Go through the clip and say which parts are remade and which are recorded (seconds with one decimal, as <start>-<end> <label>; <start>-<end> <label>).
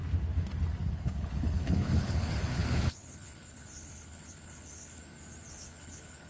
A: 0.0-0.9 recorded; 0.9-5.0 remade; 5.0-5.5 recorded; 5.5-6.3 remade